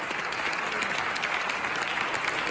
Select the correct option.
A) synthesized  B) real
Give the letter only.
B